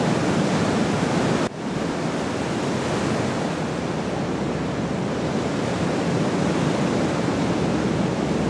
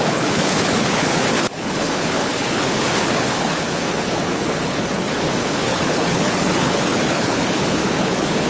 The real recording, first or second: first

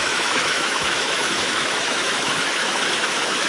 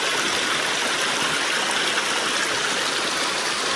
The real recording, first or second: second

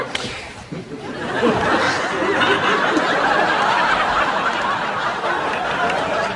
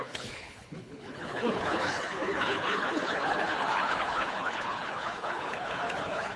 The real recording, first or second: first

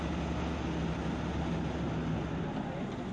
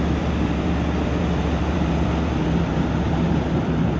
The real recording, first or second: first